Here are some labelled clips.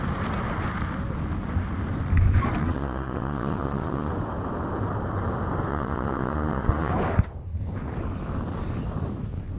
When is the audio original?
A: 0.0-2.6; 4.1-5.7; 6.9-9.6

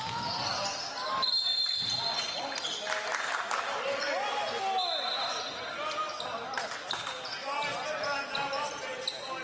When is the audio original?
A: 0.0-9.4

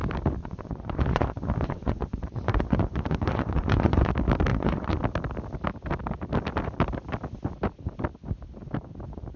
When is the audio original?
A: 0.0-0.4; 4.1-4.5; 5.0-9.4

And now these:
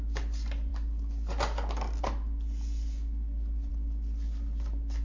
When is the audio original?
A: 0.0-5.0